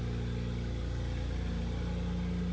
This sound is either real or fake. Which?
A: real